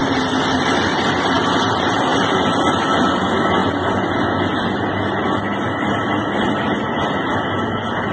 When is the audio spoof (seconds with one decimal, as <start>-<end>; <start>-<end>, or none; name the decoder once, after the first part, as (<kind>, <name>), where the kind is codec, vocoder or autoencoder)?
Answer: 0.0-1.4 (vocoder, BigVGAN v2); 2.1-2.9

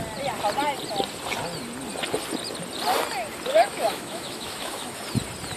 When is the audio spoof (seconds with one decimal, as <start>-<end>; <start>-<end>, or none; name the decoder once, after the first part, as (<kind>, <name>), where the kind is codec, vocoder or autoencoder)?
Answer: 3.5-5.0 (autoencoder, DAC-VAE)

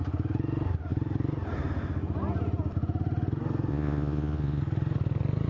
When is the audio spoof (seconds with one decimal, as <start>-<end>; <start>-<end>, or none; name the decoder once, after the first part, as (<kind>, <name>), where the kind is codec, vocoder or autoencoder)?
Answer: 3.7-4.6 (vocoder, Vocos)